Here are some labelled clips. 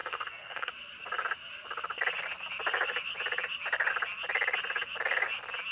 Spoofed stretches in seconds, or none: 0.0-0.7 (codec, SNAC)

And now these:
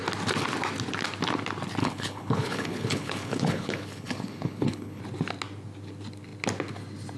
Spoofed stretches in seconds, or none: 1.8-5.0 (codec, HILCodec)

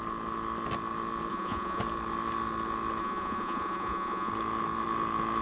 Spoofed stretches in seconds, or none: 1.3-1.8 (vocoder, Vocos); 3.0-4.3

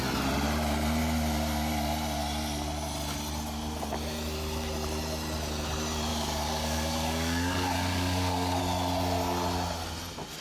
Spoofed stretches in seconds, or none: 6.1-8.6 (codec, DAC)